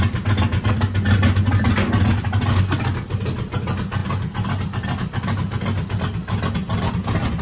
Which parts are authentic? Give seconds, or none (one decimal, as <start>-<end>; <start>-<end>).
0.0-7.4

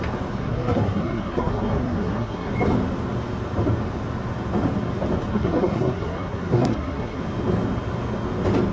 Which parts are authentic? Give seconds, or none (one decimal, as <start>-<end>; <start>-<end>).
0.0-0.4; 2.5-5.3; 7.2-8.7

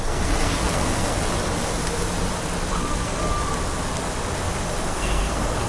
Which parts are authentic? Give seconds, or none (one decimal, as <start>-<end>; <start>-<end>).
1.3-2.7; 3.2-4.8

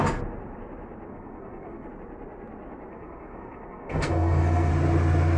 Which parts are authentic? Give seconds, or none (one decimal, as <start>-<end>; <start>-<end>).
0.0-1.1; 1.9-2.9; 4.7-5.4

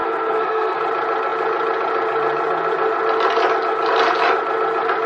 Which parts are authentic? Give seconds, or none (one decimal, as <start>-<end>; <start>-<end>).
0.8-5.1

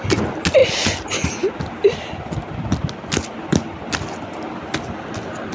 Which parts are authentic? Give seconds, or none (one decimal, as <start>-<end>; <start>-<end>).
0.0-5.5